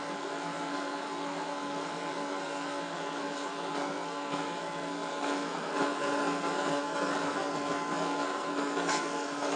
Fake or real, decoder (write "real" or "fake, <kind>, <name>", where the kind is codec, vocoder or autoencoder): fake, codec, SNAC